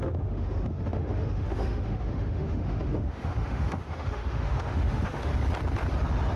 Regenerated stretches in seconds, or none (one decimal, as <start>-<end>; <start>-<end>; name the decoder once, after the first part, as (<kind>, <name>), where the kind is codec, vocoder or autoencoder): 0.0-5.3 (autoencoder, DAC-VAE)